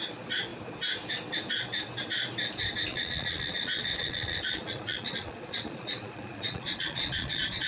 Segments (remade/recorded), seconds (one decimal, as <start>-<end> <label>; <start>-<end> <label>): 0.0-2.9 recorded; 2.9-7.7 remade